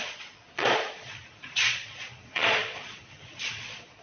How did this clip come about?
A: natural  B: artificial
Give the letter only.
B